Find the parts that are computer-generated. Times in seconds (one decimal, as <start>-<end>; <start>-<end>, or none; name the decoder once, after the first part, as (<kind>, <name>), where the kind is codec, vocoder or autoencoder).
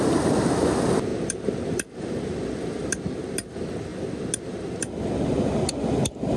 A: none